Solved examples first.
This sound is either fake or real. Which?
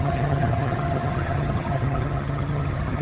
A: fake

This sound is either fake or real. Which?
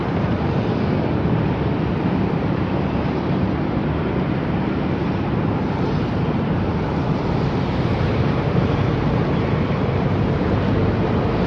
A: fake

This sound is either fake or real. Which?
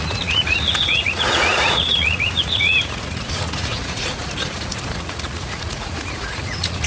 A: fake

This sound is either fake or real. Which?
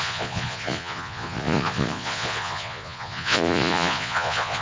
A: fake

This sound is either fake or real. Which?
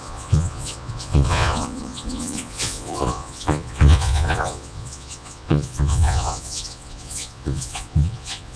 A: fake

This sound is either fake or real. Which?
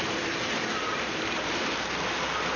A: real